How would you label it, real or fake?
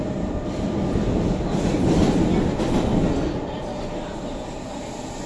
real